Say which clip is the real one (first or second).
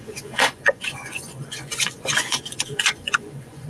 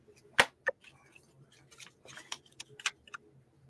second